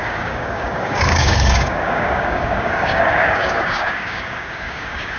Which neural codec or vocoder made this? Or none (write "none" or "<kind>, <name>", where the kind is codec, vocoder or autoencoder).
codec, DAC